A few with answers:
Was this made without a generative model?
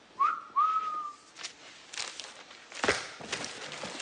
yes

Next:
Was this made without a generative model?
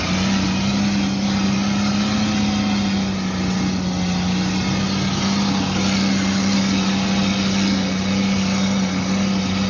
yes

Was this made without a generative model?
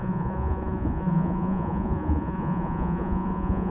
no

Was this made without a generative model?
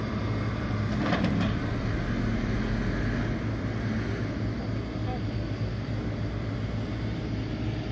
yes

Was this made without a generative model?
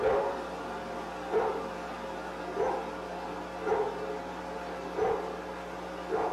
yes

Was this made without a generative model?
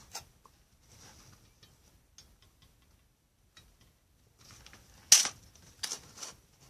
yes